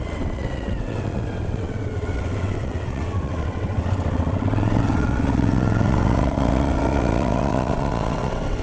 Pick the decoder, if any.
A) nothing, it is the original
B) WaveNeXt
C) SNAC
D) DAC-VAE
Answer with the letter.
B